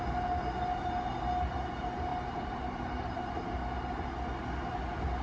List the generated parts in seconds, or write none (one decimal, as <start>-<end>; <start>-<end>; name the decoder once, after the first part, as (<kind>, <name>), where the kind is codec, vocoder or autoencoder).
2.1-3.5 (vocoder, BigVGAN v2)